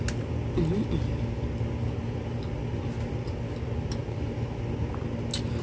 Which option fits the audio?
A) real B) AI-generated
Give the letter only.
A